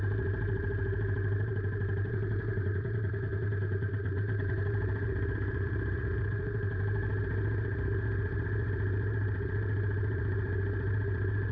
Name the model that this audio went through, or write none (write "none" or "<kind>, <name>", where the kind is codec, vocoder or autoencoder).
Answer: vocoder, BigVGAN v2